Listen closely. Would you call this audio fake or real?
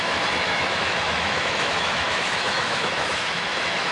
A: fake